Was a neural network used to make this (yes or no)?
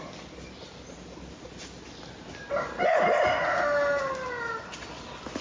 no